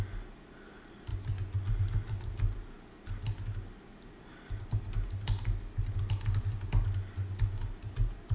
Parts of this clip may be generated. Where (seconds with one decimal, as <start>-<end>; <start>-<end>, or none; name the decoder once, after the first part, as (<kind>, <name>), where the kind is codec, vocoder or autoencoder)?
none